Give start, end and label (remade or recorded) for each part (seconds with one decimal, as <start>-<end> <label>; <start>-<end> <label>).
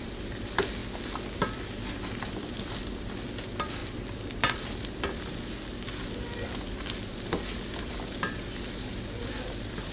0.0-0.8 remade; 0.8-1.4 recorded; 1.4-9.9 remade